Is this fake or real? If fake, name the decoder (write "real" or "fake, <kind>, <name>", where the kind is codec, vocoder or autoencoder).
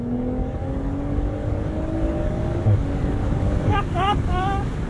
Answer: fake, codec, DAC